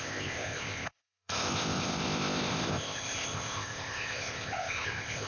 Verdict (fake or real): fake